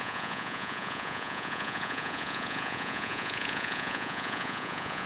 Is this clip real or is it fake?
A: fake